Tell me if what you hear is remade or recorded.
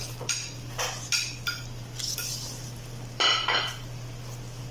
recorded